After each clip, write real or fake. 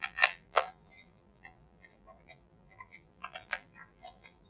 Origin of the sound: fake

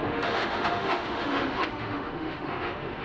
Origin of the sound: fake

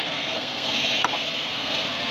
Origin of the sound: fake